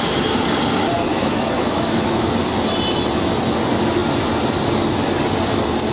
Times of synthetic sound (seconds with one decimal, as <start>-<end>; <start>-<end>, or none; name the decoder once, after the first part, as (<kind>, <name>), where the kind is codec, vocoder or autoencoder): 1.1-2.3 (autoencoder, DAC-VAE)